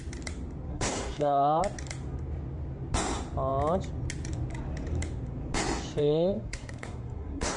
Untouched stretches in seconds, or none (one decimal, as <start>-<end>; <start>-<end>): 0.0-0.7; 1.6-6.0